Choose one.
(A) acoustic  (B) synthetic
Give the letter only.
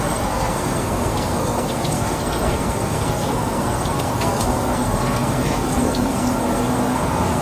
B